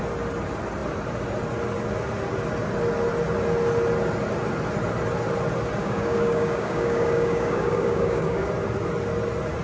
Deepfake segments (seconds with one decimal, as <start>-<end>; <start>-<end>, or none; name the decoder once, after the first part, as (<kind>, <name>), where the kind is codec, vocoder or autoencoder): 5.8-8.5 (codec, DAC)